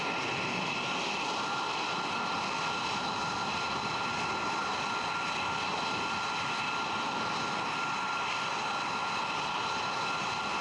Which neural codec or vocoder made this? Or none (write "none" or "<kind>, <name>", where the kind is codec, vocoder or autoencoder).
none